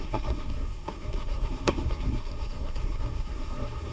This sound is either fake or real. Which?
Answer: fake